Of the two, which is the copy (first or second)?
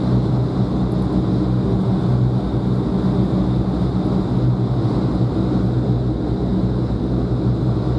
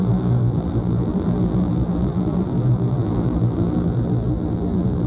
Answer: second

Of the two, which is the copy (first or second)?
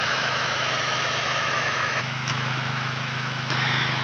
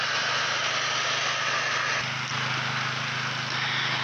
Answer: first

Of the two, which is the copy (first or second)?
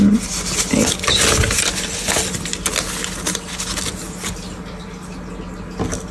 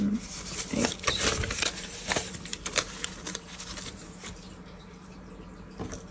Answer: second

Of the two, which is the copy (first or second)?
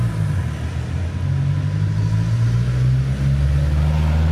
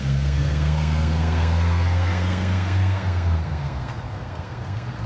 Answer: second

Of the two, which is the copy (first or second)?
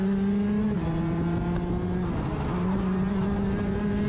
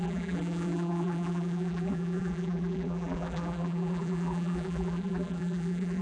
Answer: second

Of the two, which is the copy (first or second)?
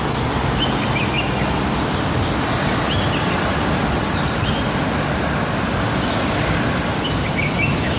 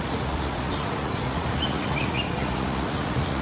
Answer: second